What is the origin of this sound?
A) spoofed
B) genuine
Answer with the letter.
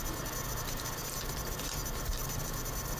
B